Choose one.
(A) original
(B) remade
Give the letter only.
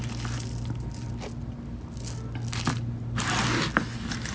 A